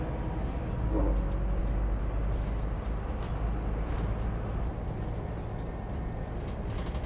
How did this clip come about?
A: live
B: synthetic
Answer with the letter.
A